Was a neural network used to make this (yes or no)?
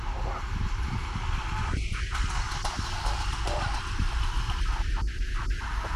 no